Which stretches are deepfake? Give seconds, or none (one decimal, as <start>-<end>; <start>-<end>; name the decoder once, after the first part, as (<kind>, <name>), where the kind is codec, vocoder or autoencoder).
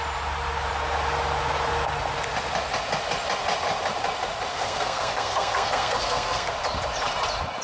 4.5-6.5 (codec, SNAC)